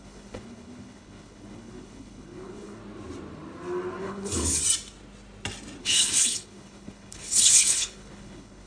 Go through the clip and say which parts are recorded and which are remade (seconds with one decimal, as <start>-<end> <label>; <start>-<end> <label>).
0.0-2.8 remade; 2.8-4.0 recorded; 4.0-4.6 remade; 4.6-5.8 recorded; 5.8-8.7 remade